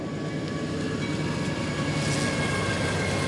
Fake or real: real